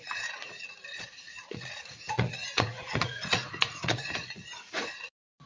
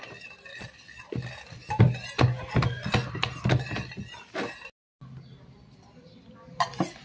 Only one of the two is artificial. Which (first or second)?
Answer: first